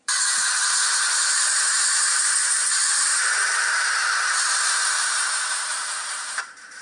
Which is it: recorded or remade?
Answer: remade